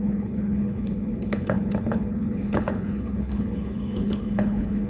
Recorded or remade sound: remade